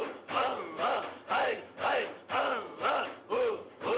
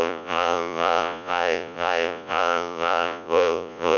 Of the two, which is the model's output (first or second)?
second